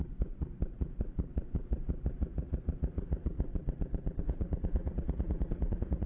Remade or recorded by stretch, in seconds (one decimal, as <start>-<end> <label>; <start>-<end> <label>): 0.0-3.5 remade; 3.5-4.2 recorded; 4.2-6.1 remade